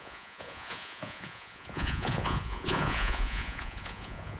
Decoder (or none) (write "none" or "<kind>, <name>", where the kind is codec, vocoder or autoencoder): vocoder, Vocos